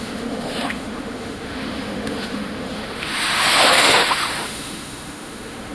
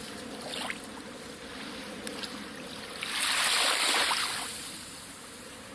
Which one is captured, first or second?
second